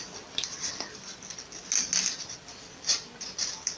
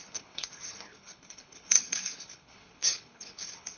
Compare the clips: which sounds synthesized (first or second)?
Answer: second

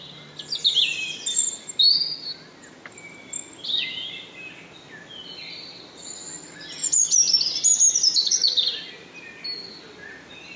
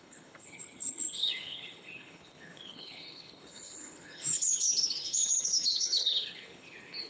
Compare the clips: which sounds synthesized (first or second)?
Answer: second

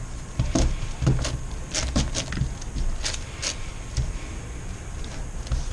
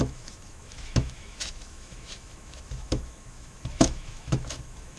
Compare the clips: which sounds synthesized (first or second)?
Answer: second